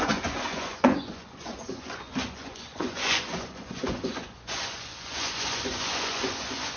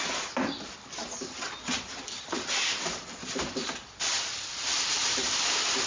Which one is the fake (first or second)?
first